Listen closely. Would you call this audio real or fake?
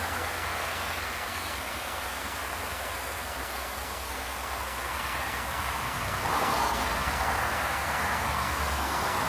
fake